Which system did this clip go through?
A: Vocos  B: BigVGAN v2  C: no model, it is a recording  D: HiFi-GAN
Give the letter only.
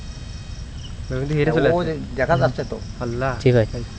C